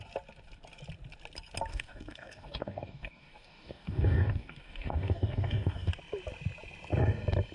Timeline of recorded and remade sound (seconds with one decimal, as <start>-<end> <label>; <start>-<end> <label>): 0.0-1.7 recorded; 1.7-5.9 remade; 5.9-7.5 recorded